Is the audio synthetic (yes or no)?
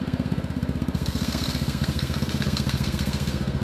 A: yes